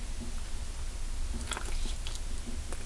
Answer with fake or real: real